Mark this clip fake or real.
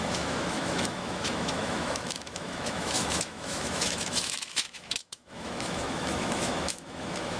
fake